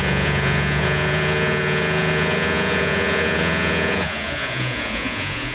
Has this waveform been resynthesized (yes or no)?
yes